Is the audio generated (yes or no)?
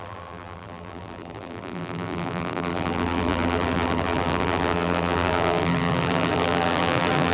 yes